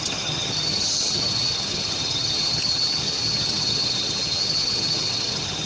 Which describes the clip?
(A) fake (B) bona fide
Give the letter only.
A